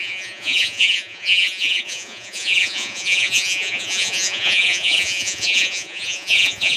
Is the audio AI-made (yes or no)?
yes